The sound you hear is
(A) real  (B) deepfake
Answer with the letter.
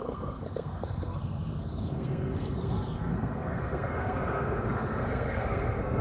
B